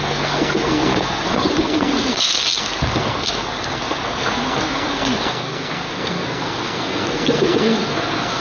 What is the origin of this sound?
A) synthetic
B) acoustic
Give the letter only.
A